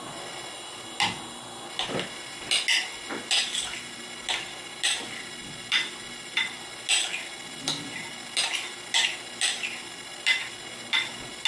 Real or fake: real